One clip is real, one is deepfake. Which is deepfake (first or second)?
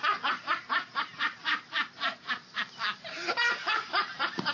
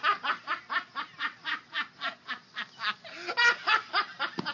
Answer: first